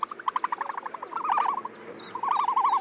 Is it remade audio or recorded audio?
recorded